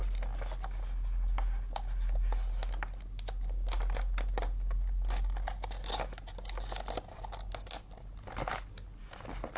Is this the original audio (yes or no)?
yes